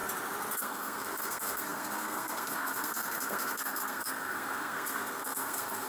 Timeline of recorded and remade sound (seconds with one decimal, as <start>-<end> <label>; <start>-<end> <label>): 0.0-0.6 recorded; 0.6-5.9 remade